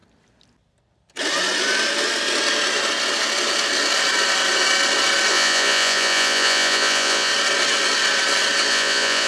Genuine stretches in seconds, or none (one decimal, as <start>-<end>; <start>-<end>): 0.0-5.3; 7.3-8.7